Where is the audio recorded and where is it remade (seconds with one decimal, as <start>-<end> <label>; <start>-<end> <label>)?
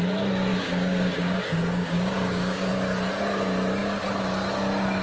0.0-0.5 recorded; 0.5-2.7 remade; 2.7-5.0 recorded